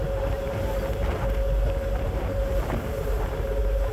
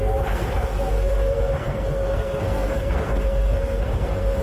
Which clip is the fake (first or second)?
second